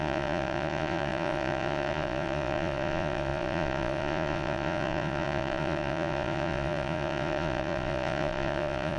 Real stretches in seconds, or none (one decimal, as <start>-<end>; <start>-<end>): none